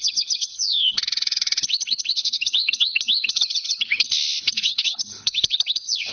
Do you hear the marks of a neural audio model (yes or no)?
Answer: yes